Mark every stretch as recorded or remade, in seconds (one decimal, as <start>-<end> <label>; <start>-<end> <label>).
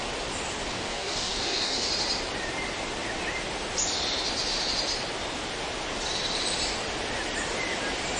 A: 0.0-0.7 recorded; 0.7-1.9 remade; 1.9-8.2 recorded